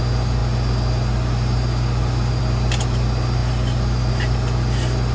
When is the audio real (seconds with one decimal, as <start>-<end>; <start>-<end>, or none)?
0.0-5.1